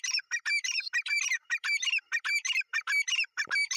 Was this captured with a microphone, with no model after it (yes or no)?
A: no